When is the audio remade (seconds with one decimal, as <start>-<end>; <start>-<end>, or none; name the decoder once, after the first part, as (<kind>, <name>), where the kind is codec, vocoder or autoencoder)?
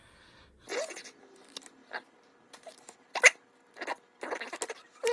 0.7-1.2 (vocoder, Vocos)